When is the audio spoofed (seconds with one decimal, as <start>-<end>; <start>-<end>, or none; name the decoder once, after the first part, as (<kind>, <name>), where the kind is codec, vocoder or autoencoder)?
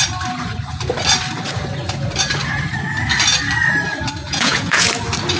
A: 4.2-4.9 (vocoder, Vocos)